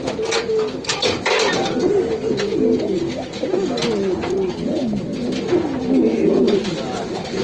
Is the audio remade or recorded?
recorded